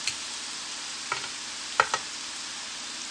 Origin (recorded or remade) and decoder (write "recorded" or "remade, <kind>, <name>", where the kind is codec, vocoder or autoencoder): recorded